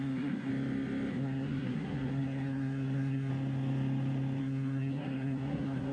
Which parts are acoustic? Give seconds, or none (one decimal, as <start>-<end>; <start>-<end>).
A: 0.5-1.1; 3.3-4.4